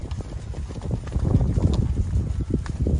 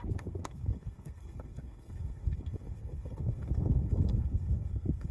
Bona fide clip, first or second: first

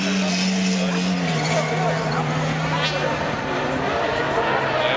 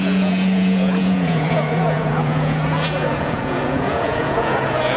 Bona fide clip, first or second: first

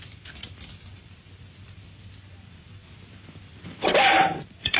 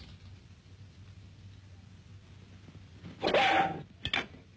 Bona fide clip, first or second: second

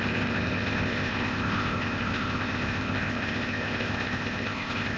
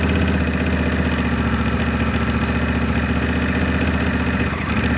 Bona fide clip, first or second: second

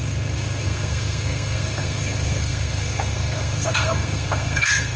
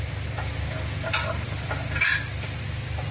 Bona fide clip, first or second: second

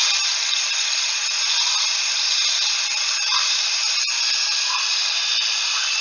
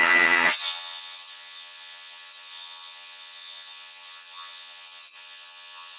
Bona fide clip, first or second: first